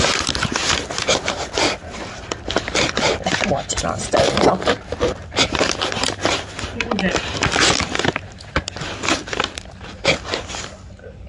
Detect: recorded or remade recorded